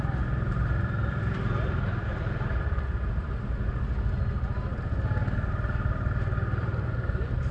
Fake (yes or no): no